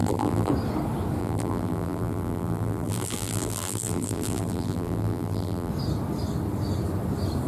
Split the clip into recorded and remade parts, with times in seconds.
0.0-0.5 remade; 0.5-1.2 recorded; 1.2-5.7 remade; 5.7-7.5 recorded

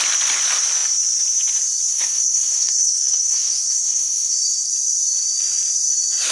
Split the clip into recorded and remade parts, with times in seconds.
0.0-1.9 recorded; 1.9-4.7 remade; 4.7-6.3 recorded

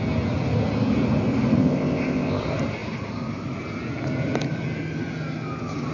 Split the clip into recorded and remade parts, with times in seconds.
0.0-1.6 recorded; 1.6-2.4 remade; 2.4-5.9 recorded